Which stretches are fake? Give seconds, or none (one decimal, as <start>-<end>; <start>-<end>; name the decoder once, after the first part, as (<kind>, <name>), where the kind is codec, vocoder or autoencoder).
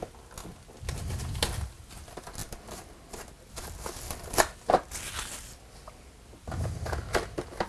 none